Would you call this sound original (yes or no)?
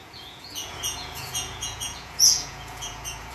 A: no